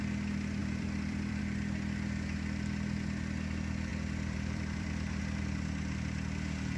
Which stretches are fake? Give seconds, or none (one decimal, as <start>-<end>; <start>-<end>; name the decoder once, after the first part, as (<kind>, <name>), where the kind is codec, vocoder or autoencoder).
0.6-1.4 (vocoder, BigVGAN v2); 3.9-5.2